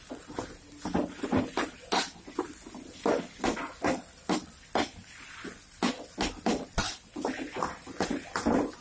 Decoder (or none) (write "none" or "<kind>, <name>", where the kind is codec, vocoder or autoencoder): none